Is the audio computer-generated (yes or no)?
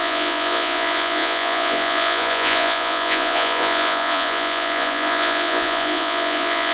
yes